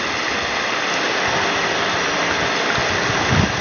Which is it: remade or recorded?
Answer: recorded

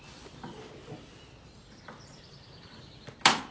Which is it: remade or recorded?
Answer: recorded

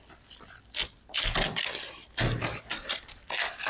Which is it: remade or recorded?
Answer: recorded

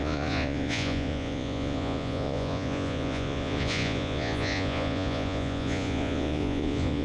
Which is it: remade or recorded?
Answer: remade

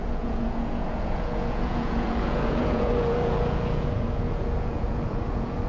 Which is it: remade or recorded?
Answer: remade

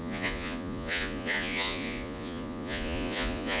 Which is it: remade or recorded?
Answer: remade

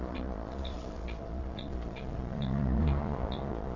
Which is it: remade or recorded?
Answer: remade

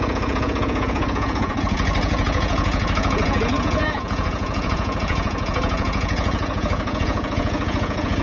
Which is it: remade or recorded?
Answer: remade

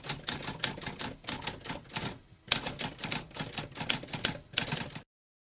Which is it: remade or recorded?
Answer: recorded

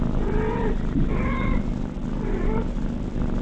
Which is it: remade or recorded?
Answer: recorded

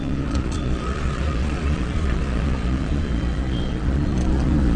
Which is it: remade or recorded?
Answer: remade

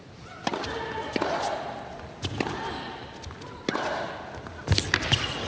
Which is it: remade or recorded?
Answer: recorded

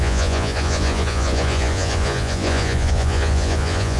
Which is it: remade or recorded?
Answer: remade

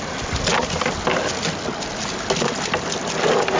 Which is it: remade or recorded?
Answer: recorded